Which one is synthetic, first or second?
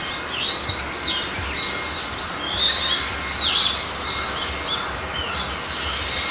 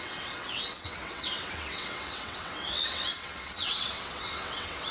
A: second